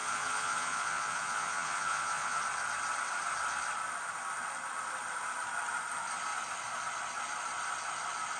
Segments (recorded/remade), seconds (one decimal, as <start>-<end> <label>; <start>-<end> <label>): 0.0-2.4 remade; 2.4-8.4 recorded